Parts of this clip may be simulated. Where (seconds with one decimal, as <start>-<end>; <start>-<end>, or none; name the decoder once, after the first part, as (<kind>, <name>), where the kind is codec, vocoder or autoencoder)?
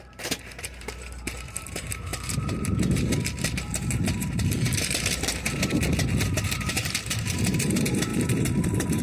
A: 0.0-9.0 (vocoder, BigVGAN v2)